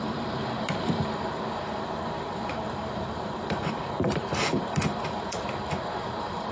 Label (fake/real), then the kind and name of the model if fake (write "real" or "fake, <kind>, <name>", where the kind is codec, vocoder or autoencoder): fake, vocoder, BigVGAN v2